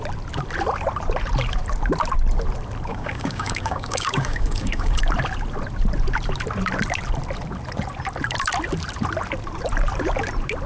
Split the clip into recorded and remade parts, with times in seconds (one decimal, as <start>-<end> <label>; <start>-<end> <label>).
0.0-2.9 recorded; 2.9-5.0 remade; 5.0-10.7 recorded